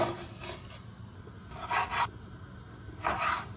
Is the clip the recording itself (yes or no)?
yes